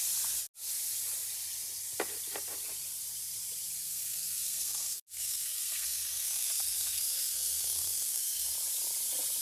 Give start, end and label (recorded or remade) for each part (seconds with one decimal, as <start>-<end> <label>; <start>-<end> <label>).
0.0-3.8 recorded; 3.8-8.5 remade; 8.5-9.4 recorded